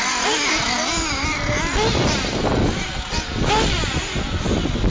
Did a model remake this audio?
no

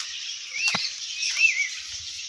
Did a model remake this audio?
no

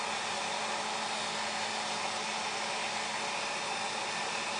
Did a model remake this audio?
no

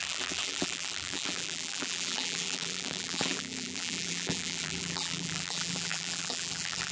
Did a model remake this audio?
yes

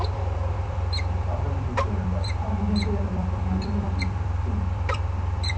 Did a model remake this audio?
yes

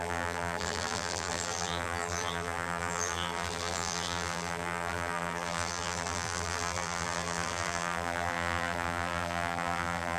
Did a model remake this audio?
yes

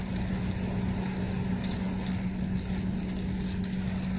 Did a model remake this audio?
no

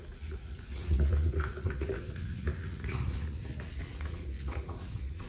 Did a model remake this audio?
yes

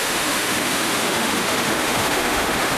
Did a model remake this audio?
yes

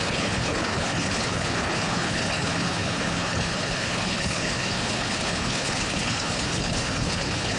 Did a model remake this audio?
yes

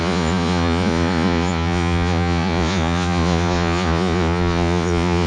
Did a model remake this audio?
yes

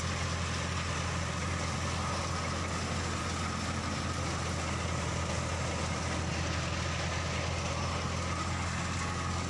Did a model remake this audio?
no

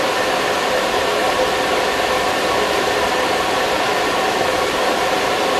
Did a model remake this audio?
no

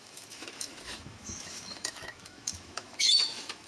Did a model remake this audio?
yes